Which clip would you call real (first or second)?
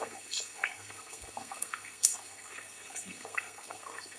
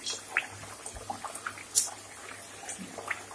second